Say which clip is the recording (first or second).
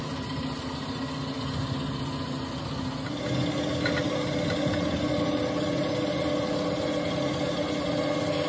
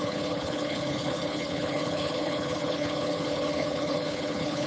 first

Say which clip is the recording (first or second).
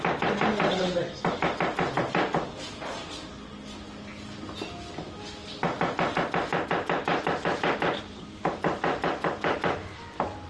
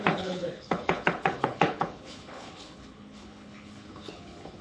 first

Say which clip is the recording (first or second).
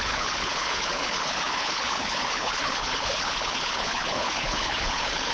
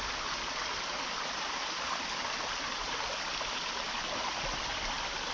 second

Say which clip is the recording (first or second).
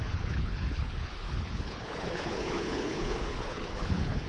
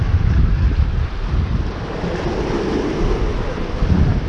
second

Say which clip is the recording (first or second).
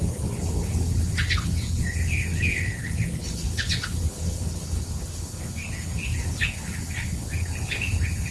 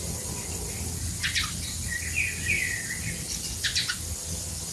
second